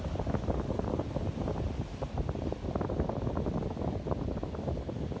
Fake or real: real